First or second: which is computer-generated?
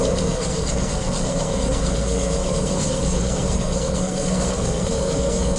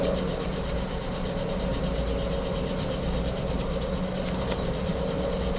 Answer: first